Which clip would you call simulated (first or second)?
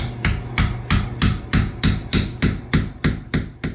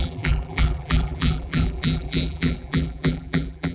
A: second